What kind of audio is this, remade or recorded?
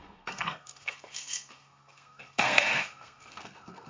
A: remade